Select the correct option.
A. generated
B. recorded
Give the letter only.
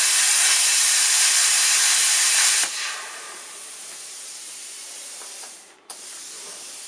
A